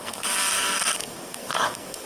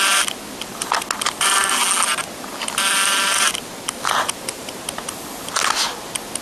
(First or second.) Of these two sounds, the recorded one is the second